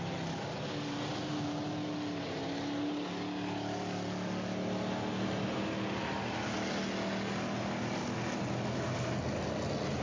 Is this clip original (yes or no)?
yes